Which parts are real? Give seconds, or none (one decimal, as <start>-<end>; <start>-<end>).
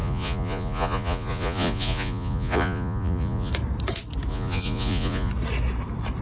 3.5-4.3; 5.3-6.2